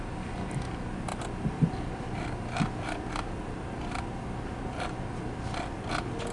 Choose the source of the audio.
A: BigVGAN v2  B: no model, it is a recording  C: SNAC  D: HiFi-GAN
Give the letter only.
B